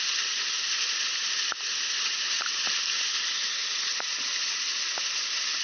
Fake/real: real